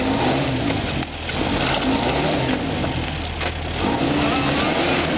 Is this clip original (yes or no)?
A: yes